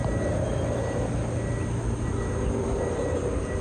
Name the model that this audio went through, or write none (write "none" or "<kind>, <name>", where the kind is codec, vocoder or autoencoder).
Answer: none